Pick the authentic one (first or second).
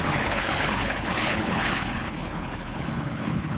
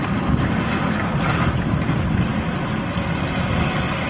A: second